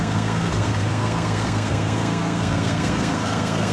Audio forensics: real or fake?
fake